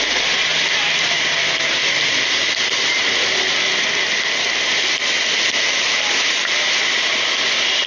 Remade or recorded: recorded